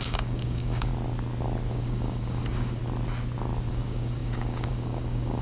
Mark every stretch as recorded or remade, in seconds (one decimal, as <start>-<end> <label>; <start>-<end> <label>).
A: 0.0-0.9 remade; 0.9-1.7 recorded; 1.7-2.8 remade; 2.8-3.7 recorded; 3.7-5.4 remade